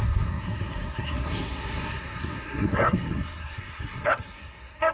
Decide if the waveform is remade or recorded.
remade